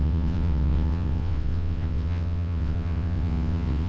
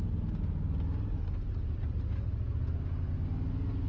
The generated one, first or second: first